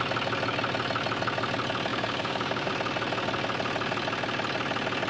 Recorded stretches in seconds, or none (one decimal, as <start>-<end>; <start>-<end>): 0.0-1.9; 2.7-5.1